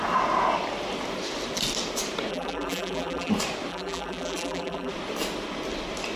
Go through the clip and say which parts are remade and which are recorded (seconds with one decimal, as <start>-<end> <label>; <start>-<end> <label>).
0.0-2.3 recorded; 2.3-3.3 remade; 3.3-3.7 recorded; 3.7-4.9 remade; 4.9-6.2 recorded